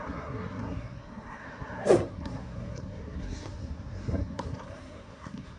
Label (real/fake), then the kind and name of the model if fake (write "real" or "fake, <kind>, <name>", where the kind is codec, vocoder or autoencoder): fake, codec, SNAC